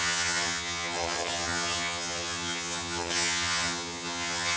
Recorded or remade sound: remade